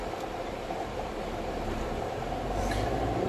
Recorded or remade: remade